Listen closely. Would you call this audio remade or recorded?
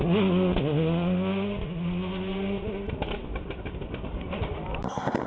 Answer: recorded